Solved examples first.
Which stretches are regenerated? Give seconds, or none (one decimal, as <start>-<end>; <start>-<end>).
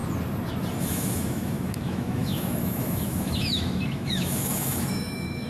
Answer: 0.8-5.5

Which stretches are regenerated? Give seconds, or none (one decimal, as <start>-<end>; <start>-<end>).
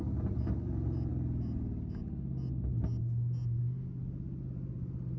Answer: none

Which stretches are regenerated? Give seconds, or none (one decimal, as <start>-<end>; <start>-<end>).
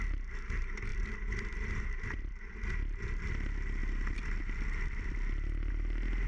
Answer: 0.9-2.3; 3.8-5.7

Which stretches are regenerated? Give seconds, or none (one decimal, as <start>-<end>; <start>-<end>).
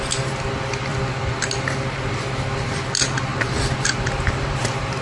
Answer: 3.3-5.0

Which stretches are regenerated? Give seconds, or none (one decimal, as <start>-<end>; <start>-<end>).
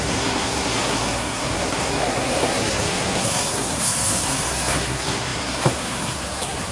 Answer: 0.0-6.7